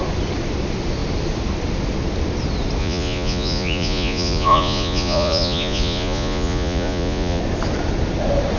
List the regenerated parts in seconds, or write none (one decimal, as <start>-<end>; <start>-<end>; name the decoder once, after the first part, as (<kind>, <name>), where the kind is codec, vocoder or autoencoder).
2.8-7.4 (vocoder, Vocos)